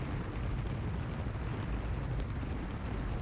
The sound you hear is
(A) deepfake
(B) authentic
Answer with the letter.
B